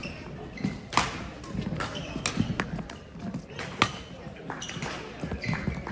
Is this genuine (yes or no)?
yes